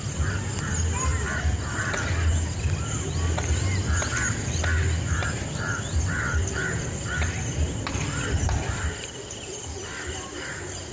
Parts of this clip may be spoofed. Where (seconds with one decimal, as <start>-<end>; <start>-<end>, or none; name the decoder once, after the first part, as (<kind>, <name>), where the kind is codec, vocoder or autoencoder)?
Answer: none